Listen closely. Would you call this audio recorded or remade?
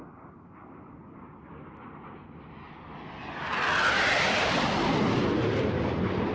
recorded